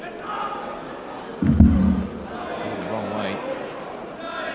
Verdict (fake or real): real